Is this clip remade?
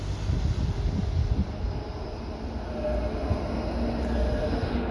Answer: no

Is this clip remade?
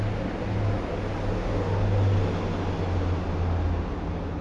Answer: no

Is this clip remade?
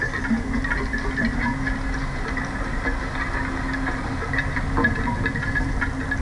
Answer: no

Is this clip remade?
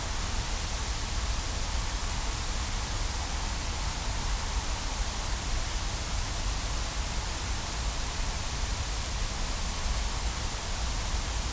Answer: no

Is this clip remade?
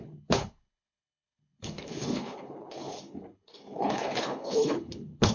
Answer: yes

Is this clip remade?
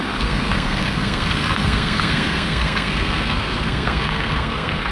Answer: yes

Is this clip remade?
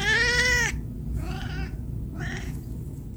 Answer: no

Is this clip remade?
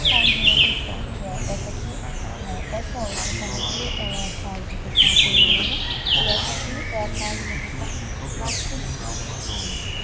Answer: no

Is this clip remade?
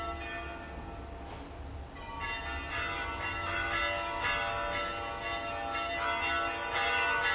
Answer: no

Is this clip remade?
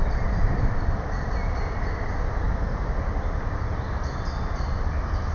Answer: yes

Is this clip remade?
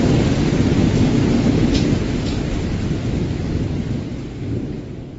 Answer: yes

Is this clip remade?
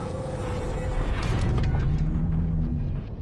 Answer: yes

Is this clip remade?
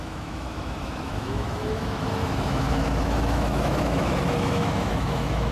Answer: yes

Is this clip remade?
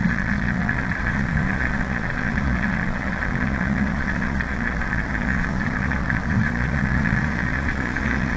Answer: yes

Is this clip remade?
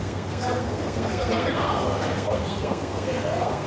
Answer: yes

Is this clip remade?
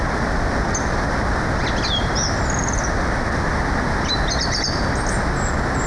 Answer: no